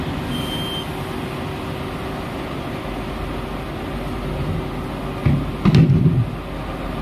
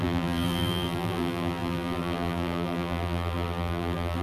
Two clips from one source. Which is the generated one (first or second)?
second